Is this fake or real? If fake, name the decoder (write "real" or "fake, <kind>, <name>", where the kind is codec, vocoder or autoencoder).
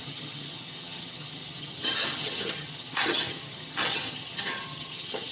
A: fake, vocoder, HiFi-GAN